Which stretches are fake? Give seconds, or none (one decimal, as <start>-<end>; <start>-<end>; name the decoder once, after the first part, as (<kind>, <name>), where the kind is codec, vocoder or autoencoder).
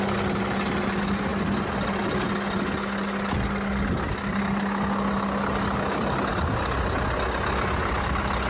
none